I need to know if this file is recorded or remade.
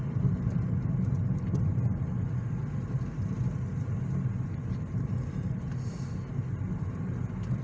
recorded